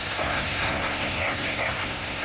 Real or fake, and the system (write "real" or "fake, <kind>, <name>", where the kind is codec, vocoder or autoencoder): fake, codec, SNAC